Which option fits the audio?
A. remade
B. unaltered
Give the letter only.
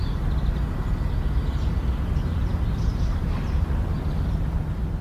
B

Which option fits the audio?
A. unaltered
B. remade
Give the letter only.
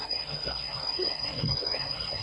B